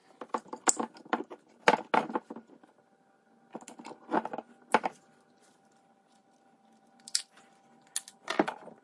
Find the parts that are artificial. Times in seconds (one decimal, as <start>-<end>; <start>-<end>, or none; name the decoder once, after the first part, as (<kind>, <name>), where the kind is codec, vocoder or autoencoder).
none

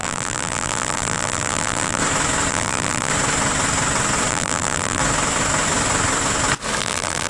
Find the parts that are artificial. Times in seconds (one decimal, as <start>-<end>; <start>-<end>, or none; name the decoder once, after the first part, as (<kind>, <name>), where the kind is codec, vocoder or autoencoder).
0.0-2.0 (vocoder, BigVGAN v2); 2.5-3.1; 4.3-5.0; 6.8-7.3

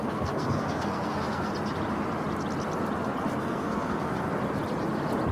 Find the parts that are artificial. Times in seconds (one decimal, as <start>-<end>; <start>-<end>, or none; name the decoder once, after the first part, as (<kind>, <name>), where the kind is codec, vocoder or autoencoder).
0.0-1.5 (codec, SNAC); 3.4-4.3

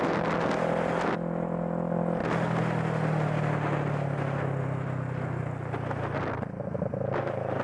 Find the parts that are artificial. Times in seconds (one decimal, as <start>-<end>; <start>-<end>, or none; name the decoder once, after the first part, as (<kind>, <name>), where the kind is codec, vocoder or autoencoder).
none

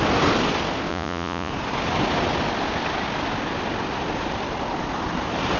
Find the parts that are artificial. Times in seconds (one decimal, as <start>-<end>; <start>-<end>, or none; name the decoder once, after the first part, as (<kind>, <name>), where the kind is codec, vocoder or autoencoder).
0.9-1.5 (vocoder, Vocos)

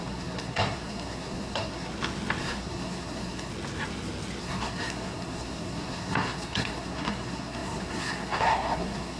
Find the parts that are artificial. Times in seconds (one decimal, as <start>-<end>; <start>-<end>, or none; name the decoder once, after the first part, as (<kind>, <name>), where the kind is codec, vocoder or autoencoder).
0.0-1.9 (codec, SNAC); 2.4-3.5; 4.4-9.2

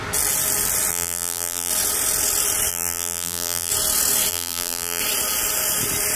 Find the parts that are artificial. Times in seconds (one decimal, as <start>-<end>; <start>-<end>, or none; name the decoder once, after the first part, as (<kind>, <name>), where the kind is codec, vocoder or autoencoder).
0.9-1.7 (vocoder, BigVGAN v2); 2.7-3.7; 4.3-5.0

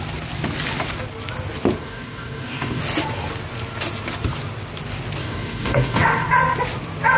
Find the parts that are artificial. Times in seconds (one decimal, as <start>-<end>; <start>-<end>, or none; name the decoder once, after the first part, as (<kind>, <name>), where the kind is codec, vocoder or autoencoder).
1.8-2.8 (codec, DAC); 5.2-6.3